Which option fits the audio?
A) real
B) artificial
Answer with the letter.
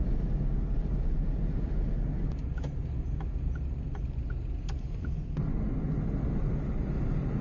A